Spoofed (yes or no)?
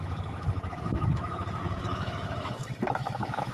yes